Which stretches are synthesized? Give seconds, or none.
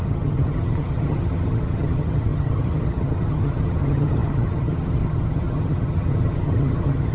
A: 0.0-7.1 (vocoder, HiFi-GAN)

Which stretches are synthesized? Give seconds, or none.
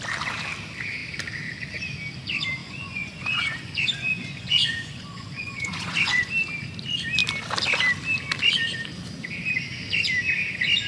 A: 2.6-6.3 (vocoder, Vocos)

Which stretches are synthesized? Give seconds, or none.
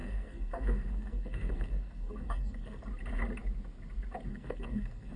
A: 0.0-2.8 (codec, SNAC); 4.3-5.2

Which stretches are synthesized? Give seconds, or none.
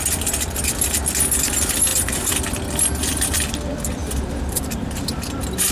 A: 1.9-2.4 (vocoder, BigVGAN v2); 4.0-5.1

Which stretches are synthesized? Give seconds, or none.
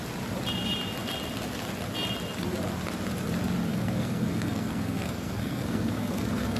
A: 3.7-6.6 (codec, SNAC)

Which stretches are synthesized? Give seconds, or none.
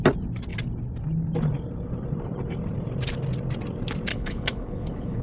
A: 4.1-5.2 (codec, HILCodec)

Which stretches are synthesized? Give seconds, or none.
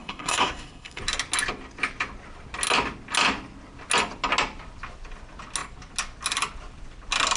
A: 0.0-1.0 (codec, SNAC)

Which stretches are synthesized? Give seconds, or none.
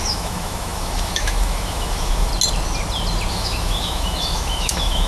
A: 0.0-2.3 (autoencoder, DAC-VAE); 3.3-5.1